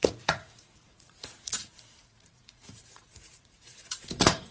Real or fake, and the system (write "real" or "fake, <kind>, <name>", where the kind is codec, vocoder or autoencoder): fake, vocoder, Vocos